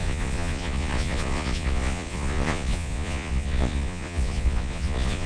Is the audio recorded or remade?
remade